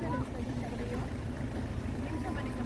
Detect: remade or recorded recorded